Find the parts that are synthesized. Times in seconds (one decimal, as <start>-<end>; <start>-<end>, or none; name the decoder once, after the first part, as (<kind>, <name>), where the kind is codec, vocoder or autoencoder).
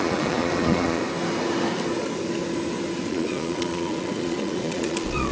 0.0-1.0 (vocoder, Vocos); 3.1-5.3